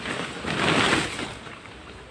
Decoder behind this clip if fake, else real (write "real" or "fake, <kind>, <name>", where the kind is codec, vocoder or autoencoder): real